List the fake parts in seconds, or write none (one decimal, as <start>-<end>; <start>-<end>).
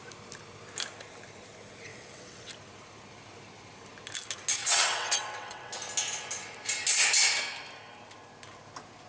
1.9-2.5; 4.6-5.7